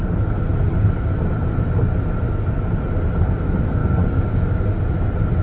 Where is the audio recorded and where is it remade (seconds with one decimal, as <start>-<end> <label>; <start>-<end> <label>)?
0.0-3.8 recorded; 3.8-4.8 remade; 4.8-5.4 recorded